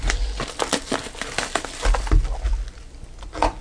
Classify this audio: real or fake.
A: real